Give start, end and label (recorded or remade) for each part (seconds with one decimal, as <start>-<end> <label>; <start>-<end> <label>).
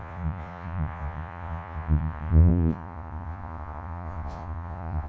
0.0-5.1 remade